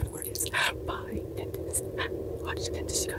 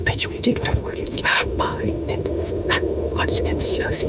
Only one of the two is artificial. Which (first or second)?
second